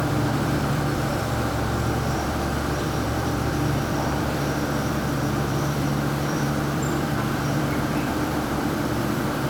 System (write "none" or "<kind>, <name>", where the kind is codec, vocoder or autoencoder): vocoder, BigVGAN v2